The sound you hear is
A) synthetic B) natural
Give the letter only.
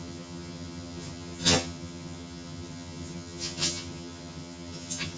A